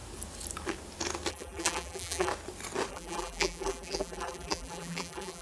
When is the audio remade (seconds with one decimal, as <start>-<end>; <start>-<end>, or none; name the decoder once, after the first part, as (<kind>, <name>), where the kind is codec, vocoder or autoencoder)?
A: 1.3-2.3 (vocoder, BigVGAN v2); 2.9-5.4